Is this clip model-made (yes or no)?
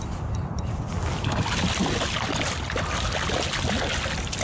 no